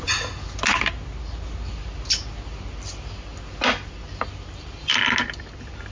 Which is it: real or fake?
real